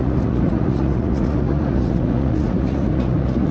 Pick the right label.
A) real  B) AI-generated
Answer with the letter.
B